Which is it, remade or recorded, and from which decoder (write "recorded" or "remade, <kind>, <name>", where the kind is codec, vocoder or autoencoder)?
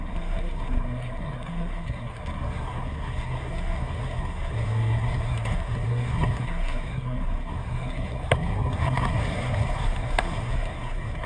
remade, codec, SNAC